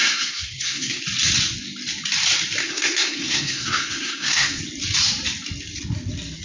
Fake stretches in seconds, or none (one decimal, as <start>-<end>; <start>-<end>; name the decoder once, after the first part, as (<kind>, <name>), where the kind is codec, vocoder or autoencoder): 0.0-1.0 (codec, SNAC); 2.6-4.6